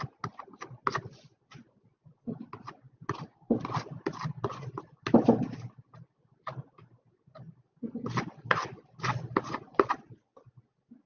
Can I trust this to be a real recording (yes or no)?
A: yes